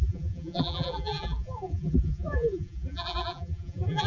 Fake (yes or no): yes